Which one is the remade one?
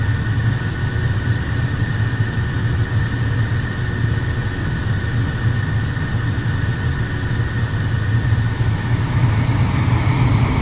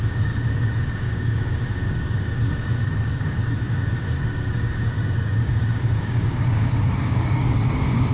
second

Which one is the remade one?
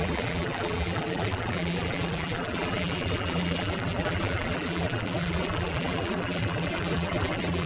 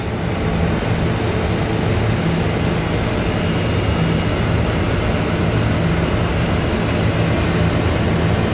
first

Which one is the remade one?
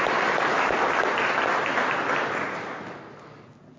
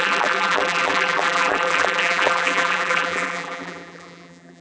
second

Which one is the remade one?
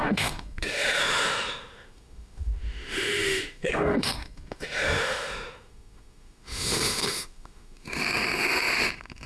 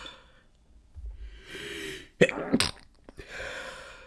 first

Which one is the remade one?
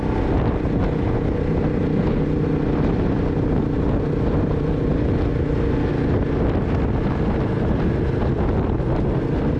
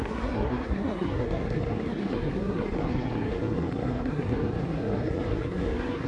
second